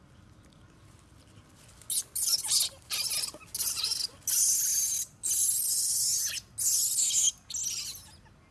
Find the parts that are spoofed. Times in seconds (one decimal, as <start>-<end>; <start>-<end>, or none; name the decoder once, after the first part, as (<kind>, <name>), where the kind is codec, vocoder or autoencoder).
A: none